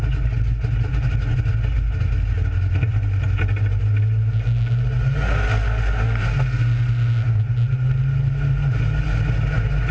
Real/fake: real